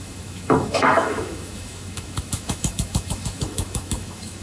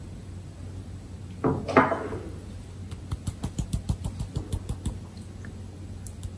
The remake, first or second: first